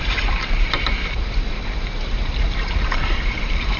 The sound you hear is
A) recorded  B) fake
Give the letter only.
B